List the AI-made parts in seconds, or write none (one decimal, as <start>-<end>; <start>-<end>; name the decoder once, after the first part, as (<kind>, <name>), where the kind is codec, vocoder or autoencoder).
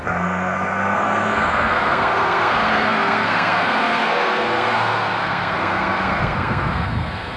0.0-7.4 (codec, SNAC)